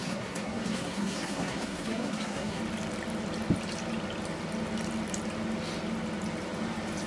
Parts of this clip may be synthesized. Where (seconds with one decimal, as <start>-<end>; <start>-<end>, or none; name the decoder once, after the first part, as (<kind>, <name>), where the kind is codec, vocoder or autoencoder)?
0.0-2.6 (codec, SNAC)